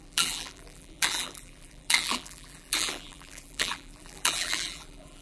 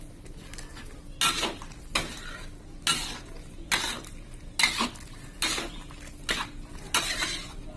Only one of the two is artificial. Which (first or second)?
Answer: first